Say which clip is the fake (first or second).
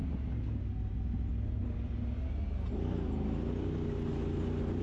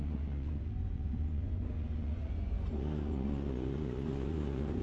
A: second